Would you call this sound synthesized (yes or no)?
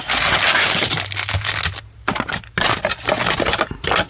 no